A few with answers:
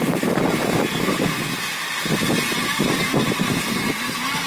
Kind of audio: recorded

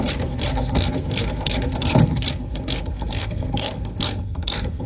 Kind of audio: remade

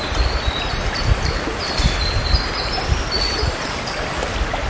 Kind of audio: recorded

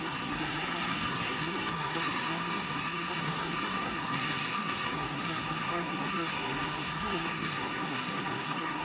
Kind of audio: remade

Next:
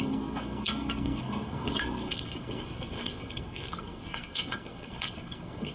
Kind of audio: remade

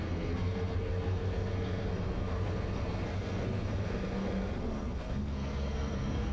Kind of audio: remade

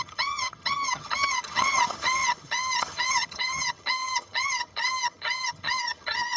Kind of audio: remade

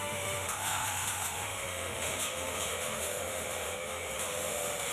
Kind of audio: remade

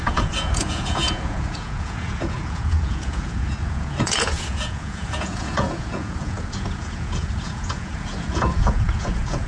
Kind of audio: remade